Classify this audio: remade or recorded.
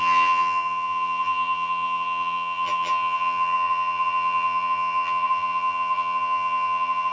remade